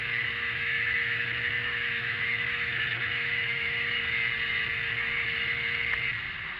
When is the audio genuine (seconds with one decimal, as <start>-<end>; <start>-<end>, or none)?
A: 4.0-6.6